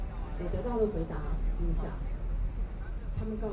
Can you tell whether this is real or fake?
real